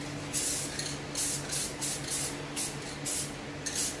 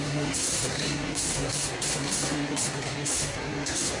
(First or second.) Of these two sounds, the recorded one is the first